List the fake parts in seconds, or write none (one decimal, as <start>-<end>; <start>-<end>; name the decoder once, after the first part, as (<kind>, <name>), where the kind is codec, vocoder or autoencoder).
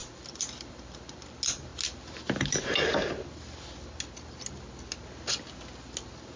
none